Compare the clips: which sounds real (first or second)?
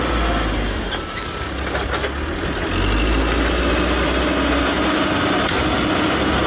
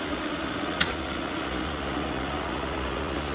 first